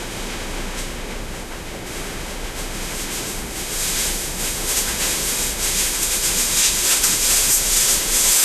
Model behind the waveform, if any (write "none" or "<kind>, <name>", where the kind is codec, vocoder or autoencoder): autoencoder, DAC-VAE